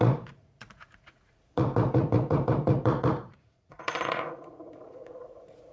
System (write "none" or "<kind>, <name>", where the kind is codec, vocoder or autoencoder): vocoder, Vocos